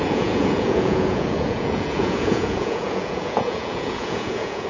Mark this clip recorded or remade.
remade